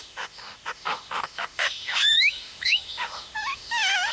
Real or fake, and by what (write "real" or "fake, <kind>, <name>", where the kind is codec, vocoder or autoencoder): fake, autoencoder, DAC-VAE